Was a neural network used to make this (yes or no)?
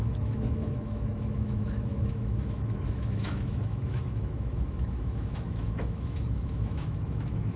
yes